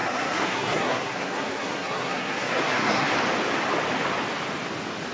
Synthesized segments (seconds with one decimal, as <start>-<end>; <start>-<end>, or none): 0.0-3.1